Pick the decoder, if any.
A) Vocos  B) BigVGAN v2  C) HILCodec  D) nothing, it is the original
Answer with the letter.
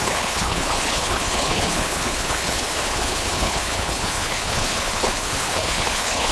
C